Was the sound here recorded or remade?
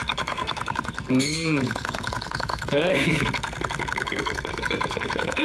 remade